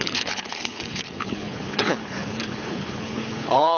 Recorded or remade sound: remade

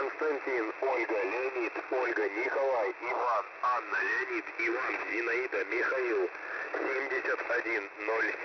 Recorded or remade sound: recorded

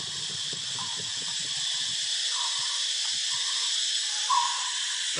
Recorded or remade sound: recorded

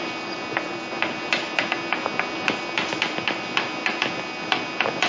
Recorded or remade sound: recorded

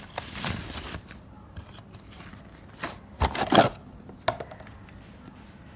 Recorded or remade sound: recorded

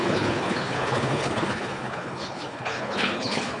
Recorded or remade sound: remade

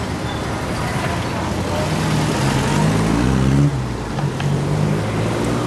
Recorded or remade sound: recorded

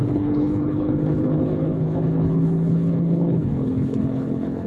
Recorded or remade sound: remade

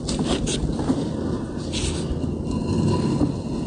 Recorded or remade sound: recorded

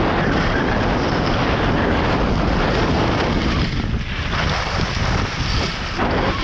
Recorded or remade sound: recorded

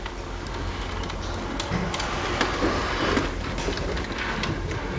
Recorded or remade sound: recorded